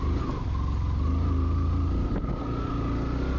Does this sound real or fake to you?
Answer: real